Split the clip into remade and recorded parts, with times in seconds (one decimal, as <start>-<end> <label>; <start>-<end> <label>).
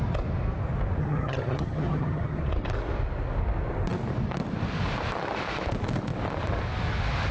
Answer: 0.0-1.0 recorded; 1.0-2.4 remade; 2.4-7.3 recorded